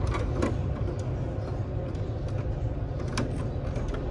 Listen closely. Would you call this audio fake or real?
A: real